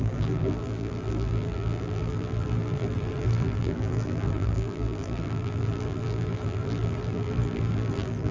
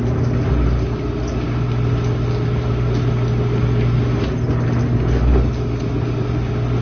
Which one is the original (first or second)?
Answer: second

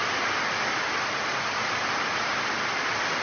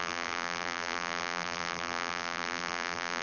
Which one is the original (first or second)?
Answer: first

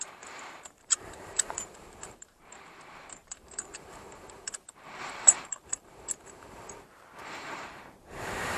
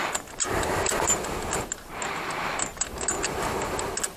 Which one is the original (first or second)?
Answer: second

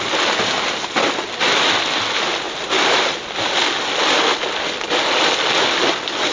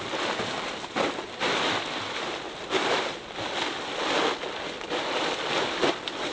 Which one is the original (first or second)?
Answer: first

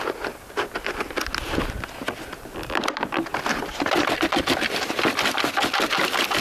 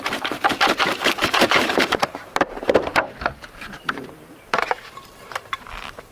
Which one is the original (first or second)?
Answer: first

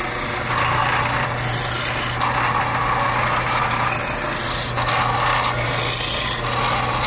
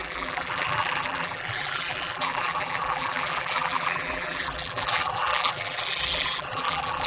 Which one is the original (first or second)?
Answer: first